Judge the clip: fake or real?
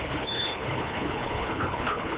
fake